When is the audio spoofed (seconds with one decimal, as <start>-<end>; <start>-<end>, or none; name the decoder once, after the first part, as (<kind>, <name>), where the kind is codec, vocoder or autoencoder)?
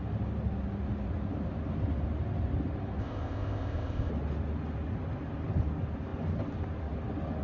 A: 3.0-4.1 (codec, ZipCodec)